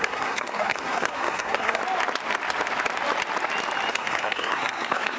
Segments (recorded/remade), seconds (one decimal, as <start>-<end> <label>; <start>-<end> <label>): 0.0-1.8 remade; 1.8-3.9 recorded; 3.9-5.2 remade